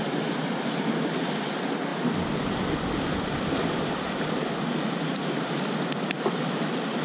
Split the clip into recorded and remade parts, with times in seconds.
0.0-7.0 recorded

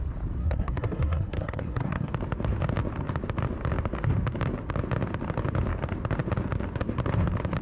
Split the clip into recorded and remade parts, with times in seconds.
0.0-0.4 recorded; 0.4-2.1 remade; 2.1-7.6 recorded

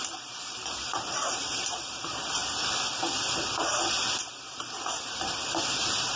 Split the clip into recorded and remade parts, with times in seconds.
0.0-2.4 remade; 2.4-3.9 recorded; 3.9-6.2 remade